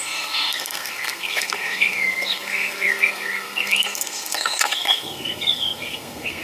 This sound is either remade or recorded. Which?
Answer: remade